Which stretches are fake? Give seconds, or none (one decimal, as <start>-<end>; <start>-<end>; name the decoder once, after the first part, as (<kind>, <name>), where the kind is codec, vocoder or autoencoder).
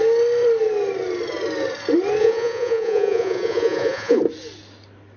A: 2.2-4.2 (vocoder, Vocos)